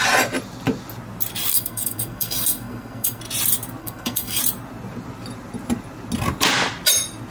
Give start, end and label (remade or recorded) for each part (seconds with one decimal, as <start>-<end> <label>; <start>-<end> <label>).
0.0-1.5 recorded; 1.5-3.2 remade; 3.2-3.8 recorded; 3.8-4.4 remade; 4.4-7.3 recorded